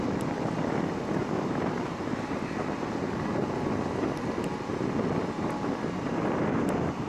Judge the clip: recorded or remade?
recorded